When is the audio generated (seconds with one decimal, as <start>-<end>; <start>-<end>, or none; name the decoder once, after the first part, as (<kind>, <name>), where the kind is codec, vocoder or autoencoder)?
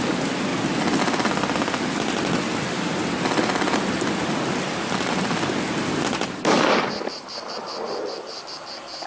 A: none